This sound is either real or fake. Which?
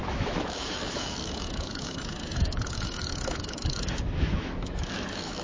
fake